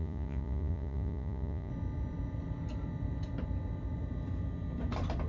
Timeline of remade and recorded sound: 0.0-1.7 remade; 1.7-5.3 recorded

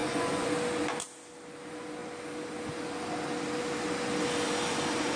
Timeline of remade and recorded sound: 0.0-0.5 remade; 0.5-5.2 recorded